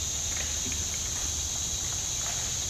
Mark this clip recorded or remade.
recorded